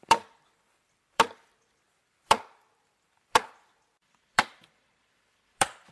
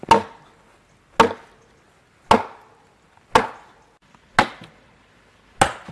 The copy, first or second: first